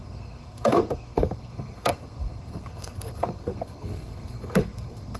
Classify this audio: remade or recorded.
remade